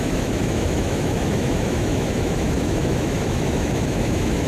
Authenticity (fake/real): fake